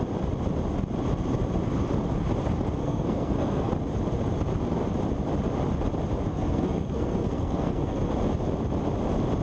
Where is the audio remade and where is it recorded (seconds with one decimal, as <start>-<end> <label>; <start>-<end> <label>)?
0.0-2.8 recorded; 2.8-3.7 remade; 3.7-6.3 recorded; 6.3-8.1 remade; 8.1-9.4 recorded

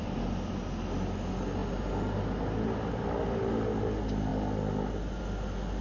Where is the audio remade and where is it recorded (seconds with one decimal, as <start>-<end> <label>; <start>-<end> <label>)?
0.0-5.8 recorded

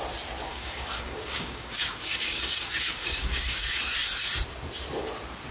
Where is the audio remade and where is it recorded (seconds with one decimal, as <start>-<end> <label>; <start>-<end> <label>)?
0.0-0.5 recorded; 0.5-3.8 remade; 3.8-5.5 recorded